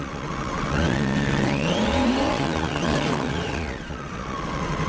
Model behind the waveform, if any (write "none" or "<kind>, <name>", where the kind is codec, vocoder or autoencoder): vocoder, WaveNeXt